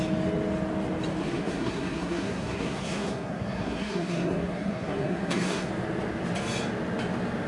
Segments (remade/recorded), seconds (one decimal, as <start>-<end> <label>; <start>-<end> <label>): 0.0-1.2 recorded; 1.2-5.7 remade; 5.7-7.5 recorded